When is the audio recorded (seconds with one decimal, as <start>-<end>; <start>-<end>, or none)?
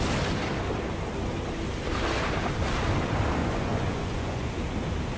0.0-3.4; 4.5-5.2